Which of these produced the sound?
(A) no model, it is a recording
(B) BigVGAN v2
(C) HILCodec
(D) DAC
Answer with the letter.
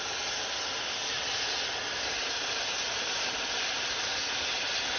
A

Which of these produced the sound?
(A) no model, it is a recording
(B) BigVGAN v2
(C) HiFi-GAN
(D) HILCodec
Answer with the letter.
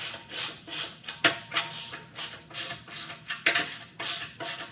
A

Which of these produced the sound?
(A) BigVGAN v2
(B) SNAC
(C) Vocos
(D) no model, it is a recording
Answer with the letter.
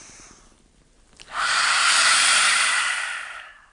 D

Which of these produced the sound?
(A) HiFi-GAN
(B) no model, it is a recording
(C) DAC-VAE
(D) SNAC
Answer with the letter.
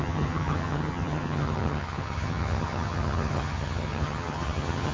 A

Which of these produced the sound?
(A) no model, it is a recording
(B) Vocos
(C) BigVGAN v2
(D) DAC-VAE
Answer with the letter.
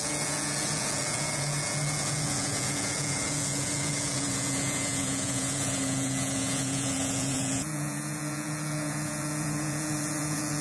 B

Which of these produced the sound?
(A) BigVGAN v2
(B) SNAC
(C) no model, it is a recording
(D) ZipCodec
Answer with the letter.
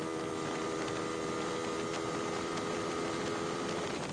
A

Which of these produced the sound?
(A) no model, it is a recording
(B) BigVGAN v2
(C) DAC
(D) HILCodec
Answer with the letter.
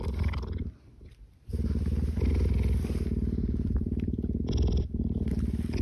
B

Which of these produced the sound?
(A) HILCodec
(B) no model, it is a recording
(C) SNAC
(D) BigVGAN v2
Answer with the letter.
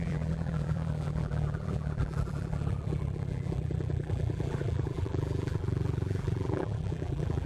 D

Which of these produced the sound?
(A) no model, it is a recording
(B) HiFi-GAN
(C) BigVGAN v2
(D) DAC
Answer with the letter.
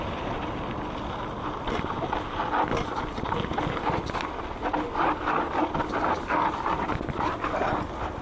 A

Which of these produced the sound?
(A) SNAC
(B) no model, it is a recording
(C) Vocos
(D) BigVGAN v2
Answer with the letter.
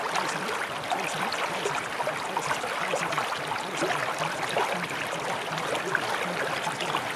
B